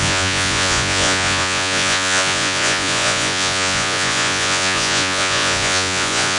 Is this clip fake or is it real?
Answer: fake